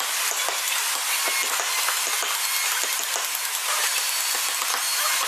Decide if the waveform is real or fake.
real